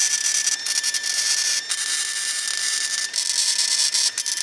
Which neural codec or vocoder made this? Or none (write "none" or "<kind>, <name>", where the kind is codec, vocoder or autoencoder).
none